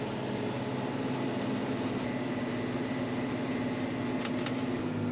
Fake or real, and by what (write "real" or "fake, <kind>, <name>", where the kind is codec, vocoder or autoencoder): real